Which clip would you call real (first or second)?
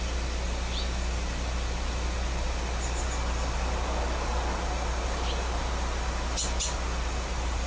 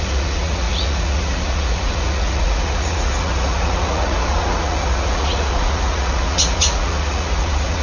first